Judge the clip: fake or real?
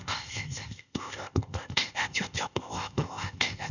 fake